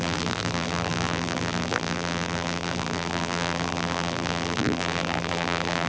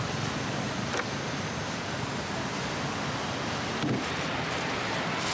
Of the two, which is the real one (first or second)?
second